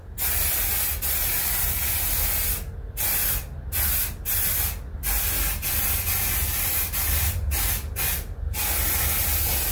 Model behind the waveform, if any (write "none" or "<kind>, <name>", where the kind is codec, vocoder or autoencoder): none